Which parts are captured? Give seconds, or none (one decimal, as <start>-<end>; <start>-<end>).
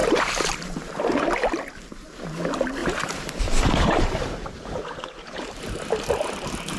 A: 0.5-2.8; 5.6-6.8